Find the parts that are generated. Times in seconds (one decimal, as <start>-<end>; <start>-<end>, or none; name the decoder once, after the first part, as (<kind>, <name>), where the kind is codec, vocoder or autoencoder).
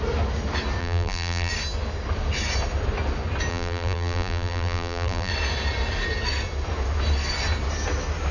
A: 0.8-1.5 (vocoder, BigVGAN v2); 3.5-5.3